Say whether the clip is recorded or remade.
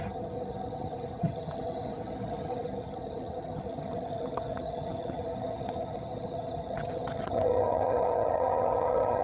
remade